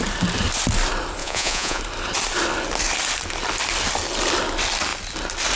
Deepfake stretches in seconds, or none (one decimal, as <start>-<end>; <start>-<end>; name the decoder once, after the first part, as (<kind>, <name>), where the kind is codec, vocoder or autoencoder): 1.2-1.8 (vocoder, Vocos)